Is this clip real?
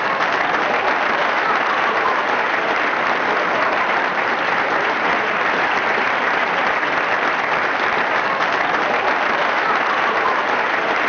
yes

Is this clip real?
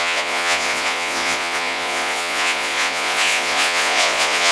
no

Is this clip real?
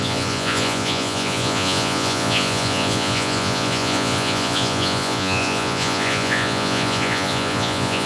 no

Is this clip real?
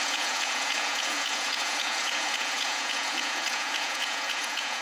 no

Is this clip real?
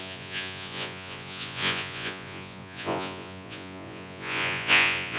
no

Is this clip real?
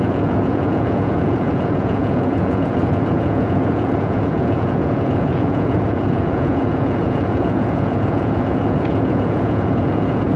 no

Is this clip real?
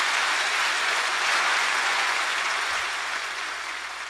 no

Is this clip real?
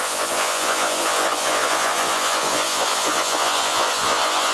no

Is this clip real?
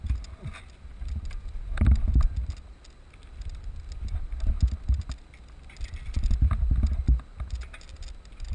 yes